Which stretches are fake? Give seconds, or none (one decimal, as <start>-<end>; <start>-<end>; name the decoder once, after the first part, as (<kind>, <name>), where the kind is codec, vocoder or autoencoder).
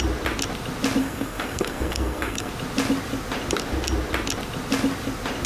1.0-2.5 (codec, SNAC)